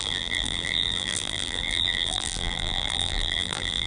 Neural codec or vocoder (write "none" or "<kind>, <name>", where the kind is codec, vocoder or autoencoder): vocoder, BigVGAN v2